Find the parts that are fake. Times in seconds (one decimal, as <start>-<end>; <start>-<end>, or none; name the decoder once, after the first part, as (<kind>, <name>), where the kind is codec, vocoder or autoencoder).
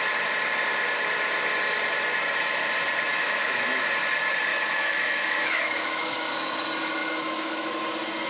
3.1-3.9 (autoencoder, DAC-VAE); 4.5-6.3; 7.0-7.7